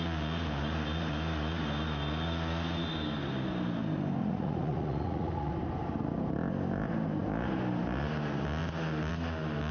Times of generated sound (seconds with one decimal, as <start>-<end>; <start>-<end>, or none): 4.2-5.5